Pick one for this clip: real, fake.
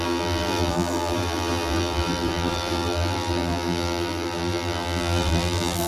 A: fake